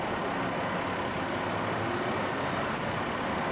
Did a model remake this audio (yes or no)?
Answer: no